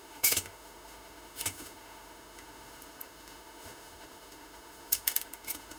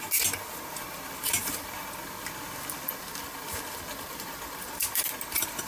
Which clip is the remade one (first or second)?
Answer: first